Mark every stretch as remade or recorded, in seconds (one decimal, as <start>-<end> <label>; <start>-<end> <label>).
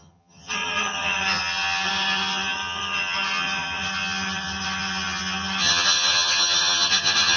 0.0-7.4 remade